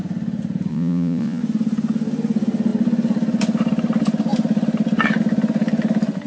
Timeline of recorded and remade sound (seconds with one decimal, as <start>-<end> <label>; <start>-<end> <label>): 0.0-0.7 recorded; 0.7-1.4 remade; 1.4-6.3 recorded